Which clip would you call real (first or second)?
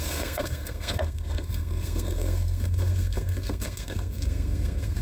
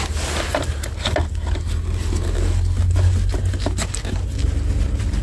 second